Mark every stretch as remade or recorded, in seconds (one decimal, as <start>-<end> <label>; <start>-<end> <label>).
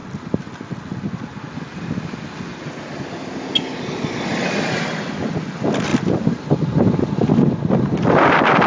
0.0-8.7 recorded